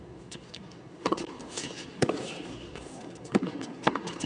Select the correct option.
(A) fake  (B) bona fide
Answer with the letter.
A